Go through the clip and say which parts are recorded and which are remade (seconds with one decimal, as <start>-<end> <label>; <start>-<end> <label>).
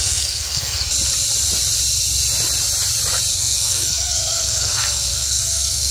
0.0-0.8 remade; 0.8-3.3 recorded; 3.3-5.9 remade